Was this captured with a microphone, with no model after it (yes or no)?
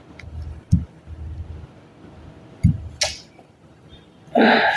yes